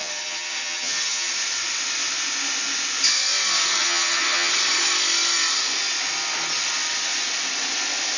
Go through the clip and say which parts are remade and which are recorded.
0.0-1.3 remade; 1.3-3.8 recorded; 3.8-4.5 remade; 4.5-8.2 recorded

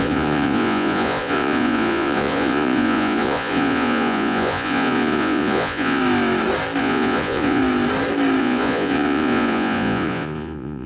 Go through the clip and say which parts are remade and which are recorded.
0.0-6.0 remade; 6.0-6.8 recorded; 6.8-7.6 remade; 7.6-8.4 recorded; 8.4-10.9 remade

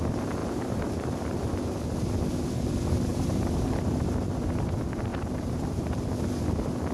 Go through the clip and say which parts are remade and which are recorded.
0.0-0.4 recorded; 0.4-0.9 remade; 0.9-3.1 recorded; 3.1-3.8 remade; 3.8-5.1 recorded; 5.1-6.0 remade; 6.0-6.9 recorded

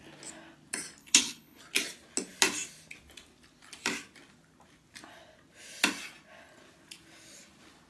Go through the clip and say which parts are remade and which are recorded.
0.0-1.0 recorded; 1.0-1.6 remade; 1.6-7.9 recorded

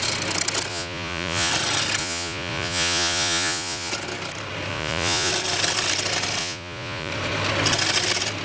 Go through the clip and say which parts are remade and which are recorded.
0.0-0.7 recorded; 0.7-1.5 remade; 1.5-2.0 recorded; 2.0-3.9 remade; 3.9-4.7 recorded; 4.7-5.3 remade; 5.3-6.4 recorded; 6.4-7.1 remade; 7.1-8.4 recorded

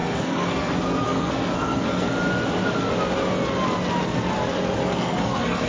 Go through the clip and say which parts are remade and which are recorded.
0.0-2.1 remade; 2.1-4.8 recorded; 4.8-5.7 remade

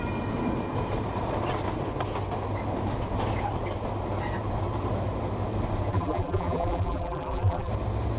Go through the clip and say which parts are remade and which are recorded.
0.0-5.9 recorded; 5.9-7.7 remade; 7.7-8.2 recorded

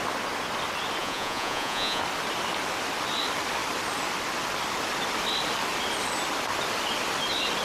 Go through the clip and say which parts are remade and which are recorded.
0.0-1.0 recorded; 1.0-2.0 remade; 2.0-7.6 recorded